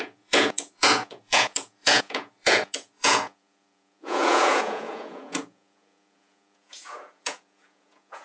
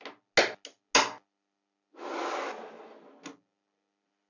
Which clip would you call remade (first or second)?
first